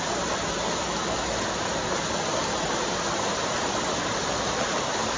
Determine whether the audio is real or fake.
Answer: real